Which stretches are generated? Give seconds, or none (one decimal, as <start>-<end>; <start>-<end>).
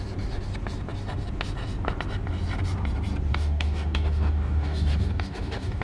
3.3-5.8